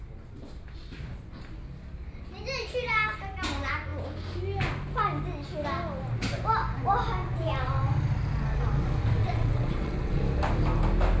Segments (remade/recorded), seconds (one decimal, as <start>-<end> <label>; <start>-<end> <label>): 0.0-9.2 recorded; 9.2-10.2 remade; 10.2-11.2 recorded